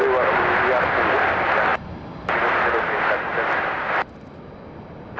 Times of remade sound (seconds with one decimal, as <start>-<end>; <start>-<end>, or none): none